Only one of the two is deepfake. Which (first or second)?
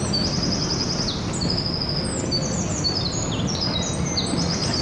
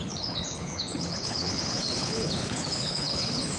second